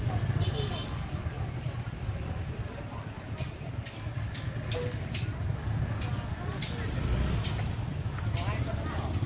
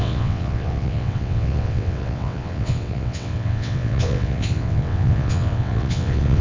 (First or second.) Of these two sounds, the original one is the first